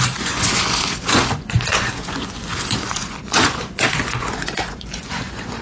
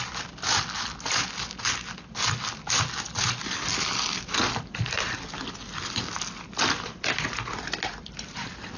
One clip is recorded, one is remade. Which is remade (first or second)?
first